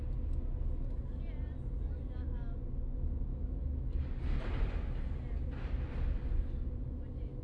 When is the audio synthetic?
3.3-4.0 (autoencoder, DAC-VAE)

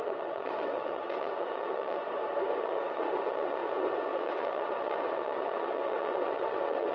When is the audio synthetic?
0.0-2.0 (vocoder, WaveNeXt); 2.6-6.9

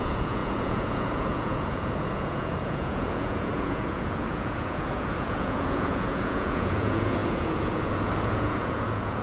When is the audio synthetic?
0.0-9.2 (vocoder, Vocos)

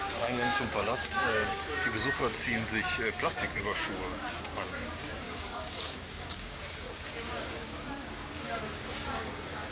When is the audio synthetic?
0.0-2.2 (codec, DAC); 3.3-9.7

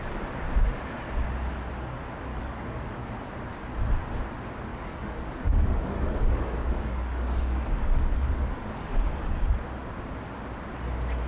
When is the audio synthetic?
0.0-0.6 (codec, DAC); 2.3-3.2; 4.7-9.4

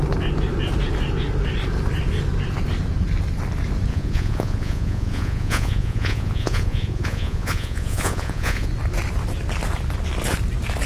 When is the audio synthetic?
3.9-8.7 (vocoder, Vocos)

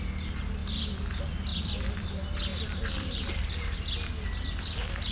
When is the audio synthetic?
0.6-1.1 (vocoder, BigVGAN v2); 1.5-2.1; 2.5-3.4